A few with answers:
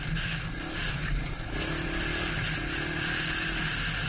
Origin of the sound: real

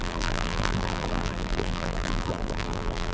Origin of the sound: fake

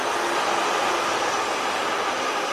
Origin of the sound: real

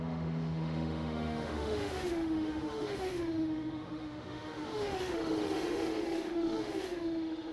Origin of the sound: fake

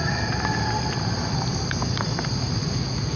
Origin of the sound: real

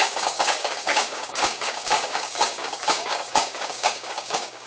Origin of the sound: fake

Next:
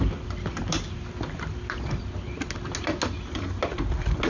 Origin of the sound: real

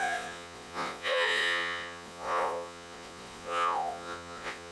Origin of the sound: fake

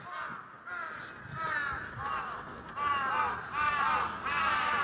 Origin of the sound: real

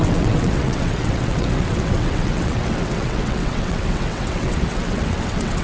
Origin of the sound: fake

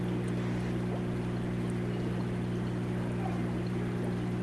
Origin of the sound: real